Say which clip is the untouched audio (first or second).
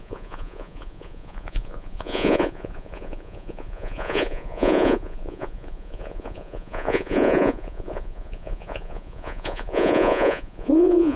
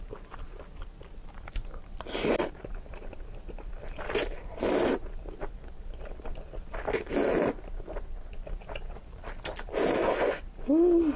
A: second